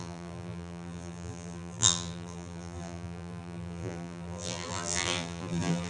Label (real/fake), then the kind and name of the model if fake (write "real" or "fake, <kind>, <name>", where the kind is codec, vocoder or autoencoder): fake, vocoder, BigVGAN v2